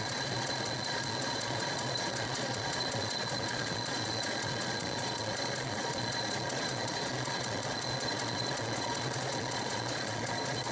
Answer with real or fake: fake